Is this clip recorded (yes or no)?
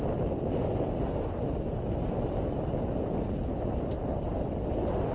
yes